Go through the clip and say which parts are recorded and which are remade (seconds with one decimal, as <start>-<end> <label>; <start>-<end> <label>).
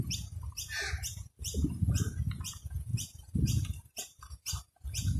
0.0-5.2 remade